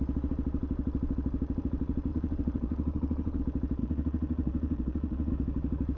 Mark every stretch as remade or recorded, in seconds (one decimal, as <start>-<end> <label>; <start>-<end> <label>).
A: 0.0-2.1 recorded; 2.1-3.4 remade; 3.4-3.8 recorded; 3.8-5.3 remade; 5.3-6.0 recorded